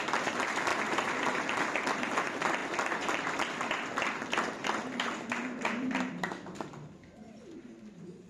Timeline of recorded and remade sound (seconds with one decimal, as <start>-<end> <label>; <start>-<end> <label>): 0.0-0.7 remade; 0.7-2.2 recorded; 2.2-8.3 remade